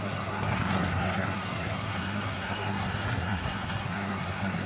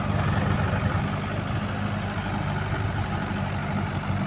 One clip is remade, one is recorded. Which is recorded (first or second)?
second